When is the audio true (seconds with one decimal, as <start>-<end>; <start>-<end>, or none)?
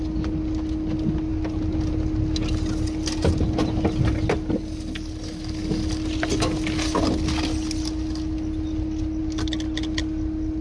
0.0-10.6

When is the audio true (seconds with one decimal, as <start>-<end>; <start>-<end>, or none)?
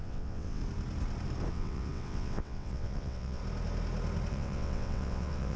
0.6-1.5; 3.4-4.3